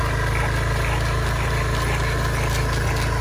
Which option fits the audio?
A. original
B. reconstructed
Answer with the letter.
A